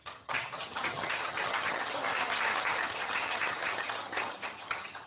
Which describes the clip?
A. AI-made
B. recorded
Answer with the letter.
A